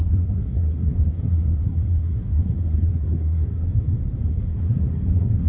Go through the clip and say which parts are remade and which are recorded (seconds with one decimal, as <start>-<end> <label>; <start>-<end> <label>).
0.0-3.7 remade; 3.7-4.3 recorded; 4.3-5.5 remade